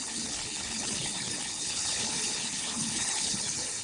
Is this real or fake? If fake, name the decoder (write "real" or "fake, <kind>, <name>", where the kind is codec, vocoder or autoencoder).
fake, codec, HILCodec